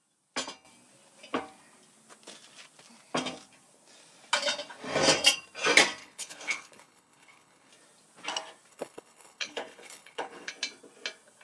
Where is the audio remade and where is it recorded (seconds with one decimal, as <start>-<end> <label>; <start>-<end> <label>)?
0.0-6.0 recorded; 6.0-7.7 remade; 7.7-8.7 recorded; 8.7-10.5 remade; 10.5-11.4 recorded